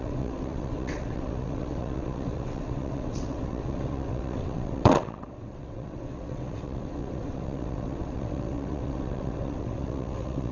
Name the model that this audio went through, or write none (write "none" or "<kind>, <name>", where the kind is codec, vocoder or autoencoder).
vocoder, WaveNeXt